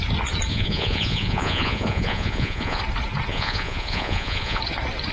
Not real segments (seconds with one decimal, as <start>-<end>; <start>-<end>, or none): 0.5-2.8; 3.3-4.6